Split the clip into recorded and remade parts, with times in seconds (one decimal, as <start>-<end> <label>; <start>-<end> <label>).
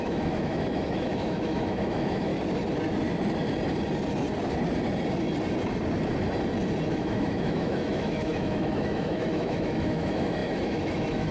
0.0-2.3 remade; 2.3-6.9 recorded; 6.9-11.3 remade